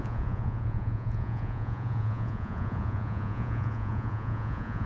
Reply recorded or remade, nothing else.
remade